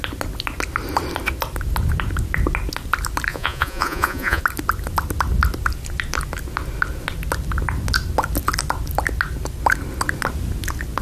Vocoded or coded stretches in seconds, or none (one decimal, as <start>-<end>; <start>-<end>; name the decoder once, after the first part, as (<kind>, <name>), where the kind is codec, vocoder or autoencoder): 3.3-4.4 (vocoder, Vocos)